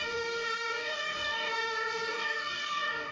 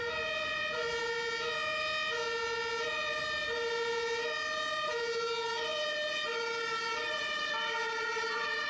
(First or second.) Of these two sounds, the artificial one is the first